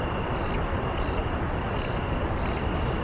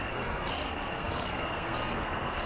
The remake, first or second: second